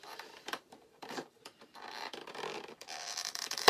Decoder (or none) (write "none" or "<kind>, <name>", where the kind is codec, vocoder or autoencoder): vocoder, BigVGAN v2